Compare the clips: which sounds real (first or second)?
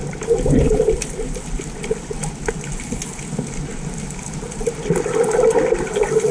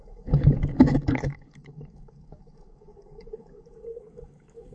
first